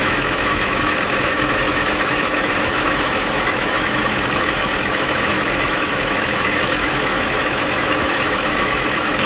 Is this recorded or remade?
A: remade